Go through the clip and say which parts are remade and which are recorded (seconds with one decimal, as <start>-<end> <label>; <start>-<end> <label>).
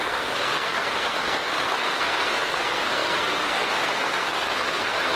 0.0-5.2 remade